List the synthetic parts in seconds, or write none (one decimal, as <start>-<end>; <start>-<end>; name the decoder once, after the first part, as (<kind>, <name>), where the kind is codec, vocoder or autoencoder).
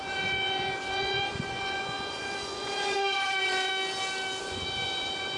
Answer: 0.0-3.7 (vocoder, Vocos); 4.4-5.4